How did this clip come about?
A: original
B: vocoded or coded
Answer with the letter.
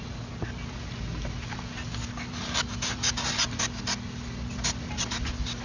A